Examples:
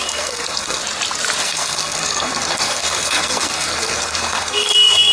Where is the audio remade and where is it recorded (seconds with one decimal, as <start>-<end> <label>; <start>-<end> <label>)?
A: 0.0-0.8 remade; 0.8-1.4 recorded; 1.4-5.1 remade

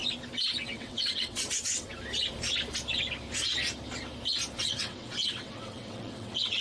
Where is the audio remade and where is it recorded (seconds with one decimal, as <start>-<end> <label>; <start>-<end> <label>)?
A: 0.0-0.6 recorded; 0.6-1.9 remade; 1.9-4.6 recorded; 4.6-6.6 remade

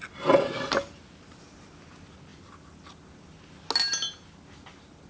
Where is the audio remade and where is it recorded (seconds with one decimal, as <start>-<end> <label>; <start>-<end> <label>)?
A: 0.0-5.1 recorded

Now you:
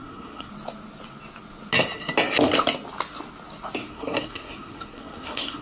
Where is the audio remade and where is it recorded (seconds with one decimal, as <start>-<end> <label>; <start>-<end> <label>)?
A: 0.0-0.5 remade; 0.5-3.9 recorded; 3.9-5.6 remade

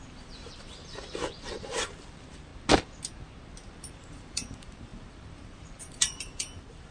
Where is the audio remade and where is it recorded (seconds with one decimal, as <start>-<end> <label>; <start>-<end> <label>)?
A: 0.0-2.5 remade; 2.5-3.8 recorded; 3.8-6.9 remade

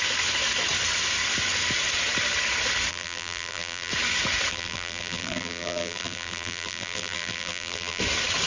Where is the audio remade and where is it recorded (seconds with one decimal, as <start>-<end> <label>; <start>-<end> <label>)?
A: 0.0-2.9 recorded; 2.9-3.9 remade; 3.9-4.5 recorded; 4.5-8.0 remade; 8.0-8.5 recorded

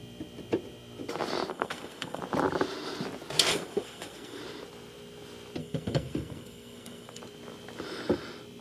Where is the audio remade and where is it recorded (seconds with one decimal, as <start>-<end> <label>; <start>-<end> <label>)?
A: 0.0-1.5 recorded; 1.5-2.2 remade; 2.2-3.5 recorded; 3.5-4.4 remade; 4.4-5.6 recorded; 5.6-7.2 remade; 7.2-8.6 recorded